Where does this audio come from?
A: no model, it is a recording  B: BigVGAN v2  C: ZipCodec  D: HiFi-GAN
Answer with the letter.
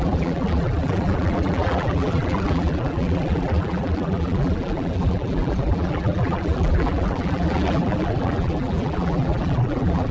B